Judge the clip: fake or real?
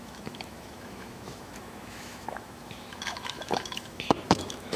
fake